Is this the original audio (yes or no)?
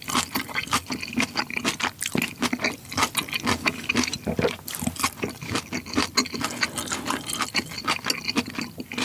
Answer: yes